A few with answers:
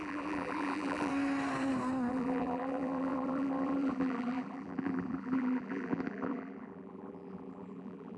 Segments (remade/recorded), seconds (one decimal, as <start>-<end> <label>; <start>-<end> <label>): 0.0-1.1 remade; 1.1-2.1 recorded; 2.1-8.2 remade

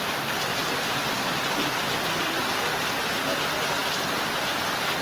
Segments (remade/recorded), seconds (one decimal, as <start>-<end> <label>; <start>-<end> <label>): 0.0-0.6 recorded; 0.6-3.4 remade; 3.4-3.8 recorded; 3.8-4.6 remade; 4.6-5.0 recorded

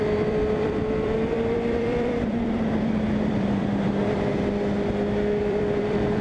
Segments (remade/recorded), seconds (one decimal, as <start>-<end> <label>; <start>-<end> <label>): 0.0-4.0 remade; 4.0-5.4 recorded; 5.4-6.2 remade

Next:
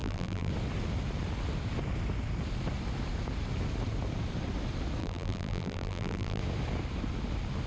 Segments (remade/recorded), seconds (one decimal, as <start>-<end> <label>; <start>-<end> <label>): 0.0-0.5 remade; 0.5-5.0 recorded; 5.0-6.4 remade; 6.4-7.7 recorded

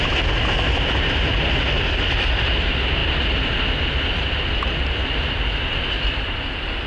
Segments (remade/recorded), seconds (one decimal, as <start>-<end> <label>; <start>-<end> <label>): 0.0-6.9 recorded

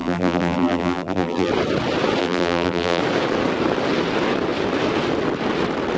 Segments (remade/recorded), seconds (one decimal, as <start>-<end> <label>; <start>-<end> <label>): 0.0-1.5 remade; 1.5-2.2 recorded; 2.2-3.0 remade; 3.0-6.0 recorded